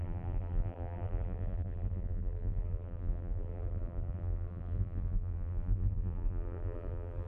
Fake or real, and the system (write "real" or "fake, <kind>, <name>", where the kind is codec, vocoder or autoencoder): fake, vocoder, BigVGAN v2